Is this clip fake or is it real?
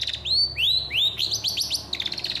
real